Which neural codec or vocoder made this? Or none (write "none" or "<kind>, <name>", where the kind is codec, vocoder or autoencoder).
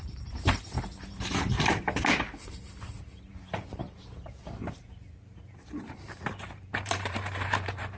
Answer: vocoder, BigVGAN v2